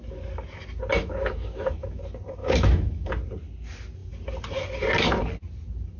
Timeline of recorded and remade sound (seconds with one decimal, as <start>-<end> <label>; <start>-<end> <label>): 0.0-0.9 recorded; 0.9-2.0 remade; 2.0-2.4 recorded; 2.4-3.1 remade; 3.1-6.0 recorded